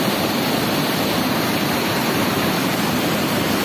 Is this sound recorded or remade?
recorded